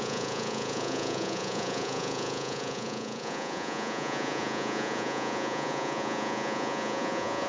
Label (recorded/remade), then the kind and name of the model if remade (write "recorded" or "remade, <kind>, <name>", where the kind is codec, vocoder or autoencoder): remade, vocoder, Vocos